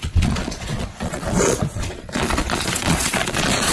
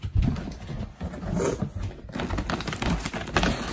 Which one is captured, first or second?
second